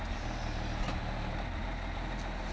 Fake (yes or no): no